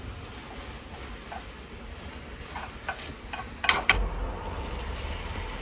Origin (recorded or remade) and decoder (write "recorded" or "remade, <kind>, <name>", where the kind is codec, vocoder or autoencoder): recorded